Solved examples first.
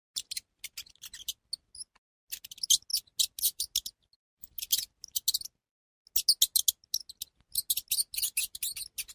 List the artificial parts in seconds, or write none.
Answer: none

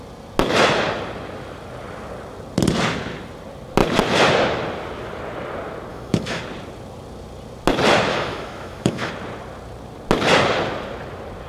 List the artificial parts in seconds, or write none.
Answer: 5.9-6.4 (autoencoder, DAC-VAE); 8.1-9.1

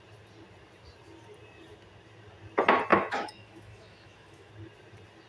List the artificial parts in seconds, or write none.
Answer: 2.9-4.5 (autoencoder, DAC-VAE)

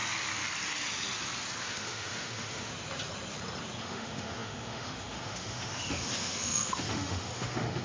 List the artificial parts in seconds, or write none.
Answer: 1.6-2.7 (autoencoder, DAC-VAE); 3.8-7.8